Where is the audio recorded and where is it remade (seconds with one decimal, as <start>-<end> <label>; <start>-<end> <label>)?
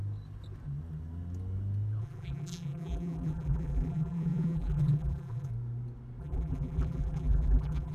0.0-2.0 recorded; 2.0-5.5 remade; 5.5-6.2 recorded; 6.2-7.9 remade